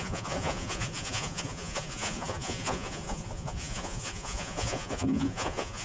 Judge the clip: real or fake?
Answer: fake